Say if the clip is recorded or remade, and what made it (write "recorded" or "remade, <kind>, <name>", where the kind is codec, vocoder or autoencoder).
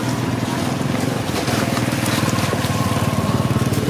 recorded